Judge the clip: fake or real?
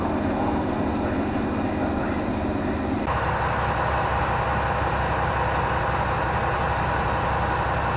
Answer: real